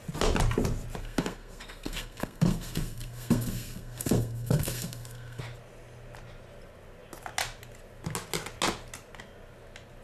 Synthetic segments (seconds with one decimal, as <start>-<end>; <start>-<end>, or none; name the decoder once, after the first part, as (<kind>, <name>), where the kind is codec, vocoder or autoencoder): 1.0-5.4 (codec, SNAC)